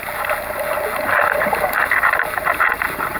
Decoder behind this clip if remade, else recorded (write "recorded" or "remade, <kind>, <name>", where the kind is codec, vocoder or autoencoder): recorded